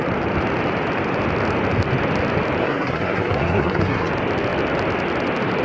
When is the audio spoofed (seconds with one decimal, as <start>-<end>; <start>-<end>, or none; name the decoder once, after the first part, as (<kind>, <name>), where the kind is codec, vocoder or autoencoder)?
2.6-4.1 (codec, SNAC)